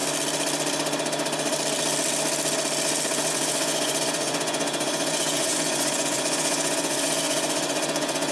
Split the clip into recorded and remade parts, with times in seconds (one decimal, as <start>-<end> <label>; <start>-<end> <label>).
0.0-3.3 recorded; 3.3-8.3 remade